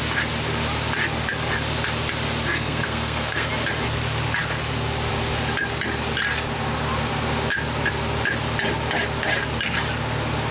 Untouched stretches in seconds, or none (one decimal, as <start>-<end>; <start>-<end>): 0.0-2.5; 3.5-10.5